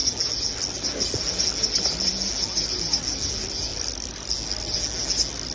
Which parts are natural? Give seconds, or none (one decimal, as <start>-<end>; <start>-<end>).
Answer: 0.0-5.5